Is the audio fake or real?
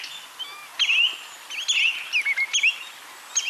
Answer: real